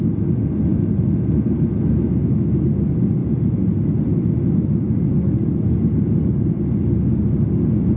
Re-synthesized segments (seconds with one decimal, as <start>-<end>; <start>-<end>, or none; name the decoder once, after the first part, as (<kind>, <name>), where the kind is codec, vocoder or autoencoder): none